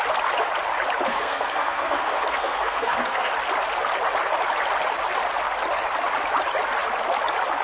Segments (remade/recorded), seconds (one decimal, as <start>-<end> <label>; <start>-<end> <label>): 0.0-1.1 recorded; 1.1-3.3 remade; 3.3-7.6 recorded